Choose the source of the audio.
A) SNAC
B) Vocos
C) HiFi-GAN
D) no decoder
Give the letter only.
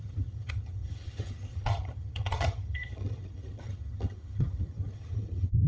C